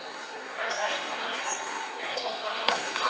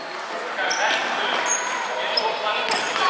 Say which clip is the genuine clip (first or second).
second